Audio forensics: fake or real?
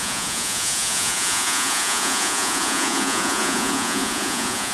fake